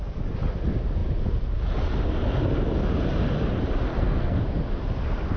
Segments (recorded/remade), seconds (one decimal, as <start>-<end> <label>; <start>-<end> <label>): 0.0-3.9 recorded; 3.9-4.4 remade; 4.4-5.4 recorded